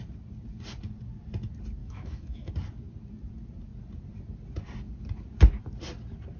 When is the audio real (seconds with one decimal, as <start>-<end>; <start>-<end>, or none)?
0.0-1.8; 2.5-6.4